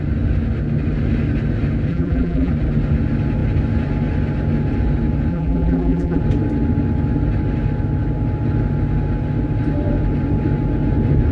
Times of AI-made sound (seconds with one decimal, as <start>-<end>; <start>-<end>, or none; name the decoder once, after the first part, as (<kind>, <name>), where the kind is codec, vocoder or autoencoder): 1.9-2.5 (vocoder, BigVGAN v2); 5.3-6.2